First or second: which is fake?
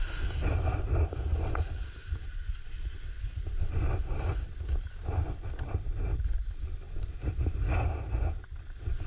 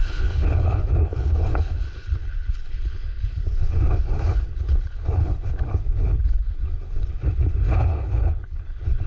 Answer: second